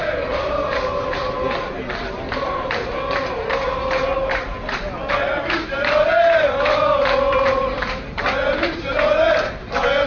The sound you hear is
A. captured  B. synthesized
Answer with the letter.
A